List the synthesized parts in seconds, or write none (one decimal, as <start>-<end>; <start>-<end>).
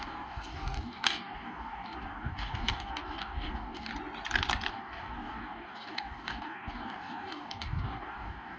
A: 0.0-3.9; 4.7-8.6